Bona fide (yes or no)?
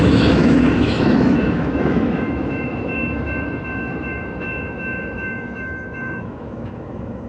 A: no